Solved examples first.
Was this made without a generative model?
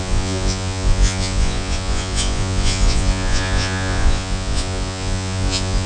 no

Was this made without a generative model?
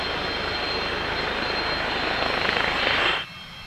yes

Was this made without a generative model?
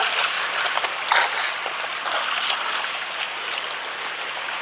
yes